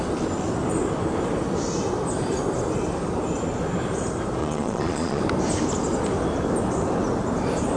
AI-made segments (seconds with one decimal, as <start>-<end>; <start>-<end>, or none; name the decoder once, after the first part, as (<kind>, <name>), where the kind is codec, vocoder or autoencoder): 4.4-5.2 (vocoder, Vocos)